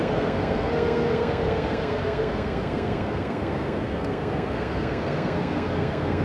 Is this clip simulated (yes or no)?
yes